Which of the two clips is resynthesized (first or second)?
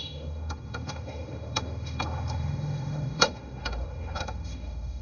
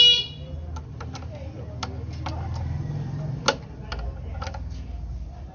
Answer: first